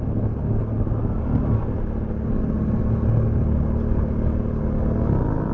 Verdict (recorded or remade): recorded